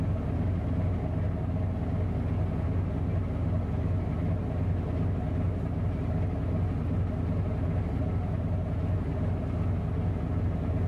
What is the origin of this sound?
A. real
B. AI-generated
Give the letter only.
A